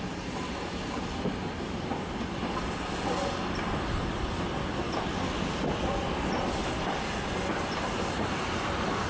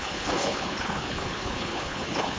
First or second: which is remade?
second